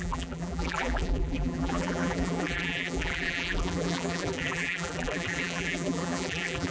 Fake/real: fake